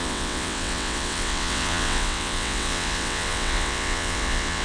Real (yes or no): no